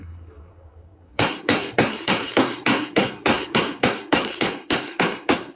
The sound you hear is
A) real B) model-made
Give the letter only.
B